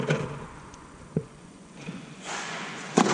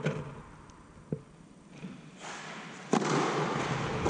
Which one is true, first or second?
second